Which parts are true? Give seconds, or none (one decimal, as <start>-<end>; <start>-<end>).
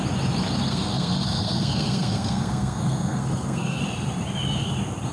0.0-0.7; 3.8-5.1